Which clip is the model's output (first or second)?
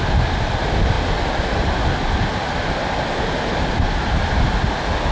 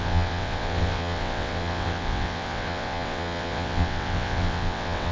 second